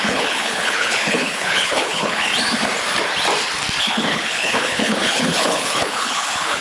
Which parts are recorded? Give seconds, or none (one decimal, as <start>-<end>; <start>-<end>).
2.3-3.8